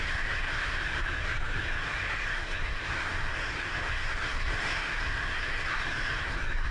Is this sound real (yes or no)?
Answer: no